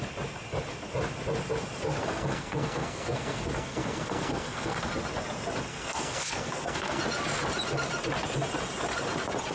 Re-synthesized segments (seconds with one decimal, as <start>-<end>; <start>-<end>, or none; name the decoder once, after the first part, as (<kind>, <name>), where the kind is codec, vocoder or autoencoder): 2.0-4.9 (codec, SNAC); 5.7-7.0